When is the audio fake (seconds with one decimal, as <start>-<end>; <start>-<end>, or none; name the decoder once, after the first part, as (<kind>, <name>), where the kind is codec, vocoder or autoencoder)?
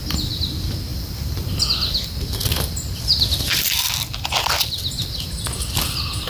0.9-2.0 (vocoder, BigVGAN v2)